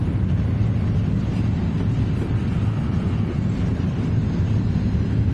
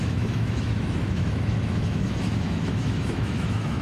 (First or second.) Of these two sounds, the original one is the first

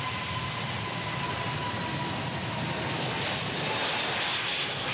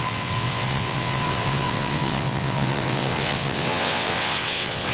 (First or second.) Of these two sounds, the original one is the first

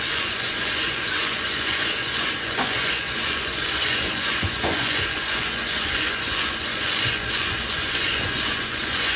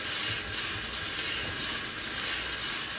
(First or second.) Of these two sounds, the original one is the second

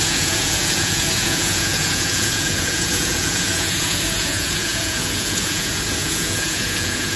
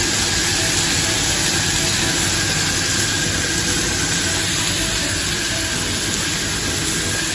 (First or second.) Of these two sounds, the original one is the second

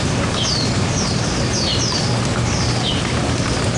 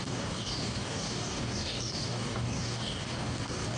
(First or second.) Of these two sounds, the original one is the first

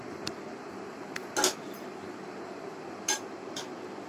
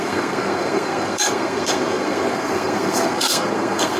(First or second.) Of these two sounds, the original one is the first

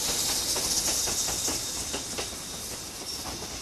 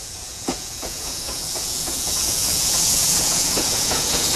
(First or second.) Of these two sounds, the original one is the first